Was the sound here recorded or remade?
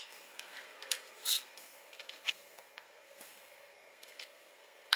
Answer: remade